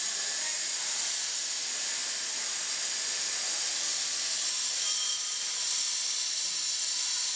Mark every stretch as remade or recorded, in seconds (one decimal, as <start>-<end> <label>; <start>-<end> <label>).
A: 0.0-7.4 recorded